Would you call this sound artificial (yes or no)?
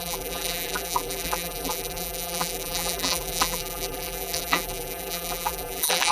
yes